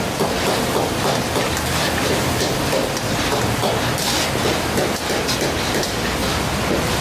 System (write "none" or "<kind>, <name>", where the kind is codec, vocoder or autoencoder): none